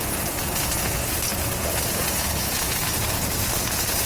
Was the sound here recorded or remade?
remade